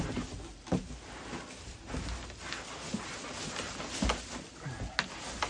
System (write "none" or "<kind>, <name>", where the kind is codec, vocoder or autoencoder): none